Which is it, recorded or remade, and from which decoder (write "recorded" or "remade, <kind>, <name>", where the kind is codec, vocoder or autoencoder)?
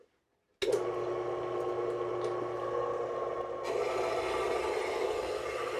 recorded